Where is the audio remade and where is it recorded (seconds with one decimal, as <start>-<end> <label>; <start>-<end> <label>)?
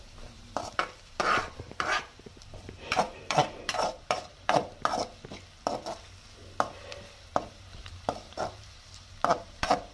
0.0-4.6 remade; 4.6-7.5 recorded; 7.5-9.9 remade